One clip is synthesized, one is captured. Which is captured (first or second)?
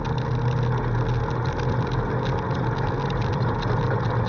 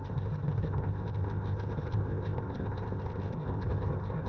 first